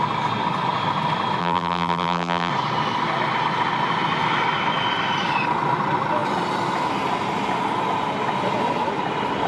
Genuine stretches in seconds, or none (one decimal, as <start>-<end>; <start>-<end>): 0.0-1.4; 2.5-9.5